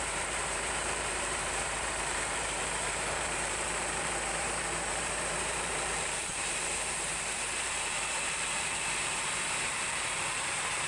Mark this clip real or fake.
fake